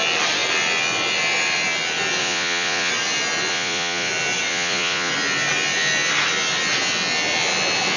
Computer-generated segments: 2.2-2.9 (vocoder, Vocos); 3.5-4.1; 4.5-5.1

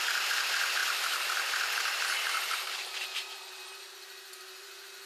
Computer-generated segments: none

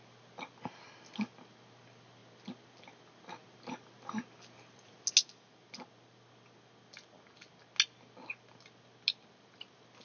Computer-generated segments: none